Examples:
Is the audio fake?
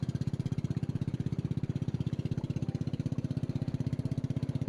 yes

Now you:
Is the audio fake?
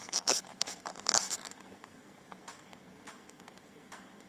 yes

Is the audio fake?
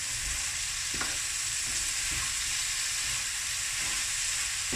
no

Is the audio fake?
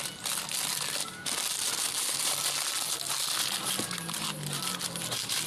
no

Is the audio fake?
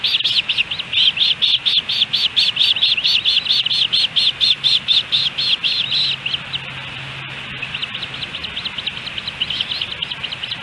no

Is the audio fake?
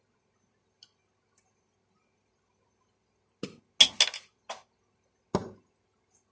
no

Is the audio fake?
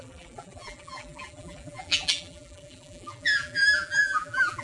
yes